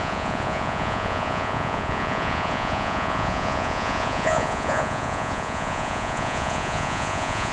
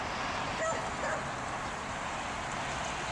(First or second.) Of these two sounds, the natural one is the second